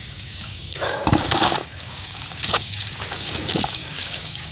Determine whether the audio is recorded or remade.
remade